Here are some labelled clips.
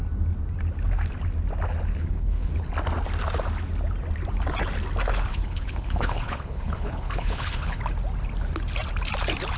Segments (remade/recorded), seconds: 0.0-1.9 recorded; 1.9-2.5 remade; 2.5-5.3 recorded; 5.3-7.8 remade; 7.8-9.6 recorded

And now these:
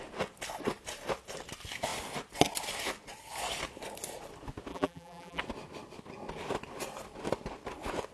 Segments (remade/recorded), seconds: 0.0-4.7 recorded; 4.7-5.4 remade; 5.4-8.1 recorded